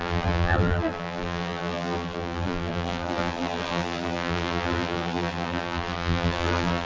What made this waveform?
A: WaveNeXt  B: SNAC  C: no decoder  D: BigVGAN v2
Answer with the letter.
D